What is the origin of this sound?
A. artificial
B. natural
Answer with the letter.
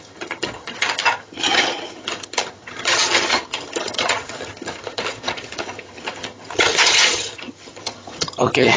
A